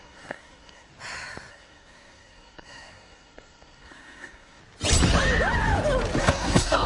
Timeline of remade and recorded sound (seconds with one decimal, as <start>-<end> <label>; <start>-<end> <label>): 0.0-0.9 remade; 0.9-1.5 recorded; 1.5-4.6 remade; 4.6-6.2 recorded; 6.2-6.9 remade